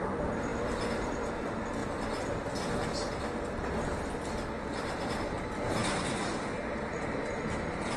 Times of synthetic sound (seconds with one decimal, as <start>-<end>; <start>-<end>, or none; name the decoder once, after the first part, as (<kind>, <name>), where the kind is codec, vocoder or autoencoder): 0.0-1.8 (vocoder, BigVGAN v2); 4.7-8.0